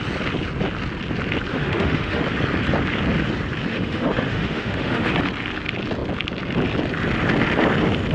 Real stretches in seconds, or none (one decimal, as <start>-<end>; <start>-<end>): 0.0-1.5; 2.2-3.7; 5.1-8.1